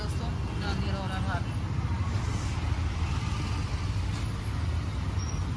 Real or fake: real